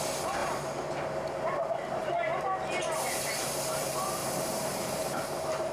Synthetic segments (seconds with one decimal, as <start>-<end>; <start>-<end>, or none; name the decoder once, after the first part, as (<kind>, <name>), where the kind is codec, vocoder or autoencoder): 1.5-2.1 (vocoder, BigVGAN v2); 4.2-5.7